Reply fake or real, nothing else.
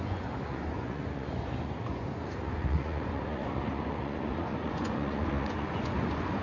fake